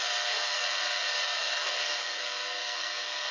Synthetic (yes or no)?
yes